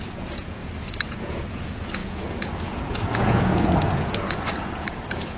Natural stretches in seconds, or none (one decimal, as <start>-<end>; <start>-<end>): none